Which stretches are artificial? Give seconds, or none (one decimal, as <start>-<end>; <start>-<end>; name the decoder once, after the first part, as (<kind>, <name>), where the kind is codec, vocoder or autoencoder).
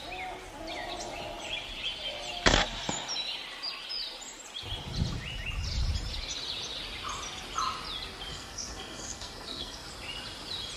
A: 8.3-9.9 (codec, SNAC)